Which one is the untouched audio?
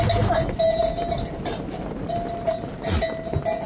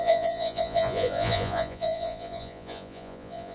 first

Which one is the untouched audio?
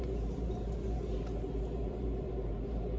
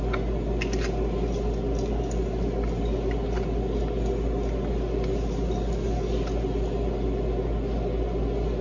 second